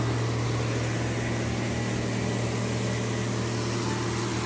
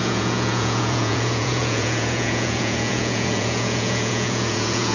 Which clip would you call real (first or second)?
first